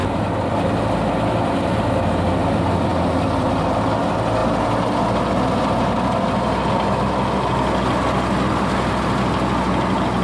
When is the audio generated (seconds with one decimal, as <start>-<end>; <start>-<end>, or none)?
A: none